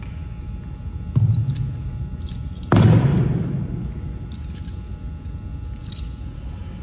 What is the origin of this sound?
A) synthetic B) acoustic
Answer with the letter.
B